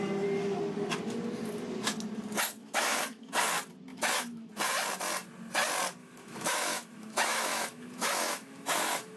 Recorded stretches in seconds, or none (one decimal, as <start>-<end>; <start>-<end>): 0.0-2.6; 3.4-3.9; 4.5-6.0